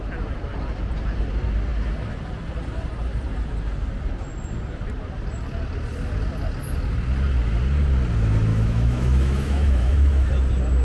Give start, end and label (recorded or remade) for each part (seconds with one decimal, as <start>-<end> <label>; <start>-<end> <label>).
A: 0.0-8.5 recorded; 8.5-10.3 remade; 10.3-10.8 recorded